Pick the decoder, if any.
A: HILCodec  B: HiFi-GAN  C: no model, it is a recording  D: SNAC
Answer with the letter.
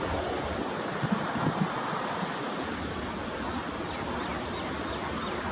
C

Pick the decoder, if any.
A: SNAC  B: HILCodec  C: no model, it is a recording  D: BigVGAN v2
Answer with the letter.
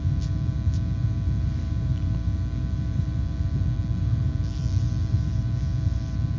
D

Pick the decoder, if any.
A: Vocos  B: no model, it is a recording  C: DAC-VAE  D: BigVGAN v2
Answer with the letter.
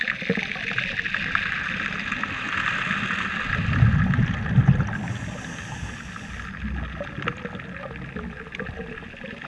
B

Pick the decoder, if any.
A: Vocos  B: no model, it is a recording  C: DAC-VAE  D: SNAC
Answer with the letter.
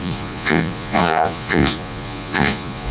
A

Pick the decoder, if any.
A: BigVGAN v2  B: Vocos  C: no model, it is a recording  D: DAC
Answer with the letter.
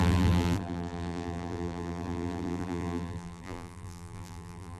A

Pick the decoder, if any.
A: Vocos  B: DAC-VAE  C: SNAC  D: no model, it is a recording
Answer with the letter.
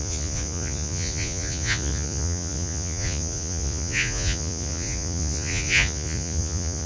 A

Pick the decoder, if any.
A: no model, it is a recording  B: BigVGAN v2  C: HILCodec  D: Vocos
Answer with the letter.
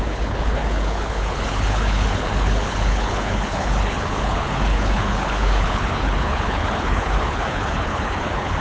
C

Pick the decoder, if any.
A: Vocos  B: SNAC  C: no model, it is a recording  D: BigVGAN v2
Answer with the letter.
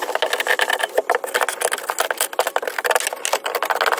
C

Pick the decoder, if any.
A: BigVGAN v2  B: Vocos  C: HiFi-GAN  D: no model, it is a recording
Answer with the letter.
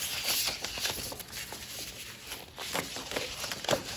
D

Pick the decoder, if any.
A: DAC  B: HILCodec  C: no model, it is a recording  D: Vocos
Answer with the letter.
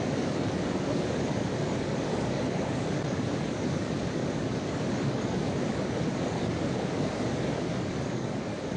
A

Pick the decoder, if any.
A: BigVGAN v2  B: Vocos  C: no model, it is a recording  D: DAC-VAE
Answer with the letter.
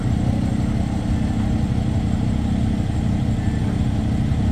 C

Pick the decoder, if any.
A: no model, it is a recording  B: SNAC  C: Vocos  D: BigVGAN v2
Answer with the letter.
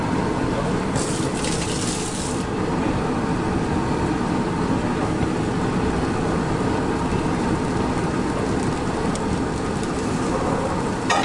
A